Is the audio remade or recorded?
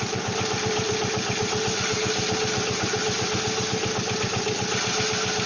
recorded